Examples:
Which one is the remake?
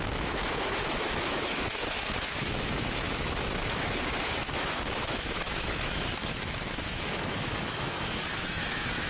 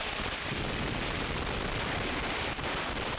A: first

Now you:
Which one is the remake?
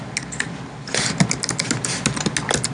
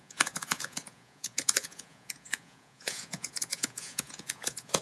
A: second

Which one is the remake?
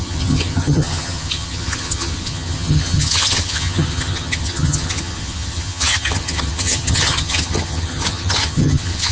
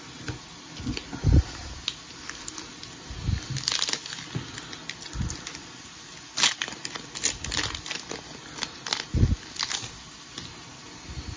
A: first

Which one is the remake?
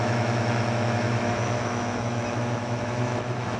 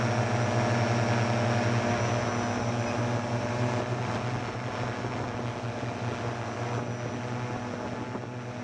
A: first